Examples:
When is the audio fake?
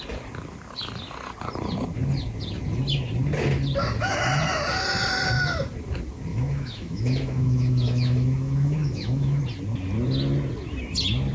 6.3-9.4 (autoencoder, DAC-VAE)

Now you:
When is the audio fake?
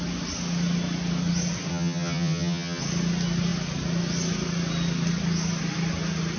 1.7-2.8 (vocoder, HiFi-GAN)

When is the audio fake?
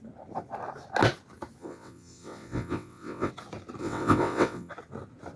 1.6-3.3 (vocoder, WaveNeXt); 3.8-4.7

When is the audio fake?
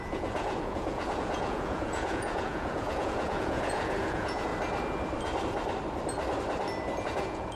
0.0-4.5 (vocoder, Vocos); 7.0-7.6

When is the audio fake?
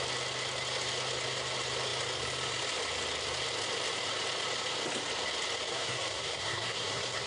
5.7-7.3 (codec, SNAC)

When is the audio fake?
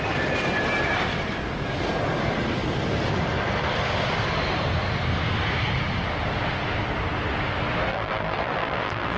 7.9-9.2 (vocoder, BigVGAN v2)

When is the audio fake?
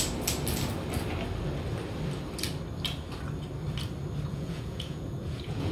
4.3-5.7 (vocoder, Vocos)